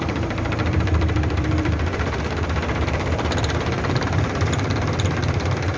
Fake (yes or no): yes